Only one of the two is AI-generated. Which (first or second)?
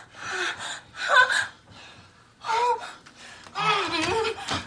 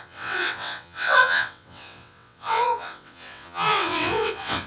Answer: second